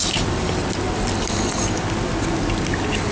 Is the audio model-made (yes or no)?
no